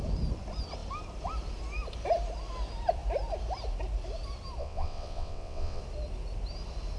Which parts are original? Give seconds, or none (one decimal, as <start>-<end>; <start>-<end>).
0.0-4.6; 5.8-7.0